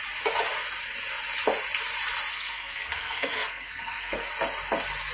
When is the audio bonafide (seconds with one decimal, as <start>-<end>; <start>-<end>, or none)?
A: 0.0-2.3; 4.3-5.1